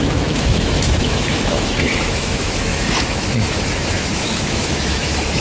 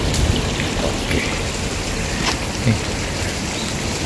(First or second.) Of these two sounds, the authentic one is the second